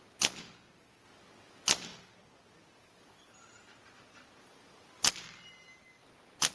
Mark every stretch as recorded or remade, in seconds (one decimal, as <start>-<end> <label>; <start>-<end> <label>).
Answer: 0.0-1.9 recorded; 1.9-5.1 remade; 5.1-6.5 recorded